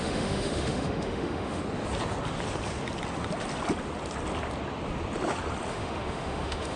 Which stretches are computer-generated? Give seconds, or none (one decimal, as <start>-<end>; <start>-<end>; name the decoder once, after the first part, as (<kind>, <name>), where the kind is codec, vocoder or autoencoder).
0.0-1.6 (autoencoder, DAC-VAE); 5.7-6.8